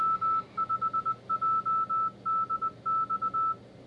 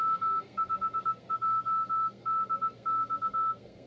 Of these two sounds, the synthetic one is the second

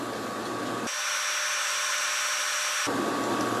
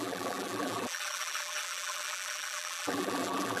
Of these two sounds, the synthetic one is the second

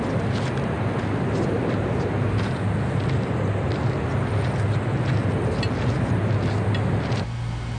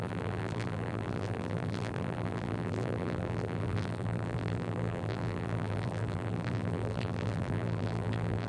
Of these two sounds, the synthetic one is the second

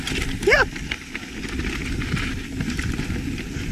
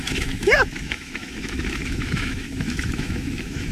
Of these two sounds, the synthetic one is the second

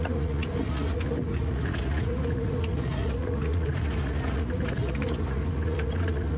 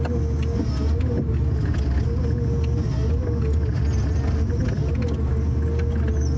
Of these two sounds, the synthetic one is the first